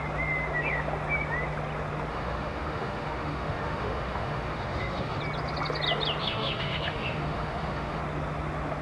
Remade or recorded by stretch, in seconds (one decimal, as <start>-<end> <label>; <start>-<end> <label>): 0.0-2.1 recorded; 2.1-5.2 remade; 5.2-6.2 recorded; 6.2-8.0 remade; 8.0-8.8 recorded